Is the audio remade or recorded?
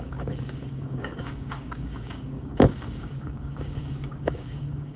remade